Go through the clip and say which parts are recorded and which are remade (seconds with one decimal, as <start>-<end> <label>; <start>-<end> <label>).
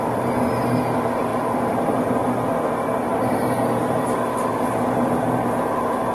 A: 0.0-1.3 recorded; 1.3-2.1 remade; 2.1-3.1 recorded; 3.1-4.1 remade; 4.1-6.1 recorded